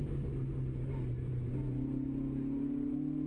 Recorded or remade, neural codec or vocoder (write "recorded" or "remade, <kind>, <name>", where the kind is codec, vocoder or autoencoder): recorded